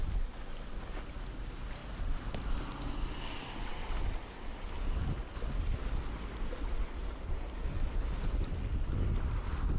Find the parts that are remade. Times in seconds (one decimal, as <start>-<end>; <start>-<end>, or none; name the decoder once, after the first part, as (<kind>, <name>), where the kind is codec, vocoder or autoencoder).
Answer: none